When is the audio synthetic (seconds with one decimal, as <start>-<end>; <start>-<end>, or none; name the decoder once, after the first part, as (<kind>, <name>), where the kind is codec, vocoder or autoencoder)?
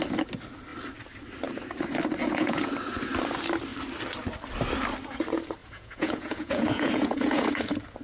2.2-2.7 (vocoder, Vocos); 5.6-7.5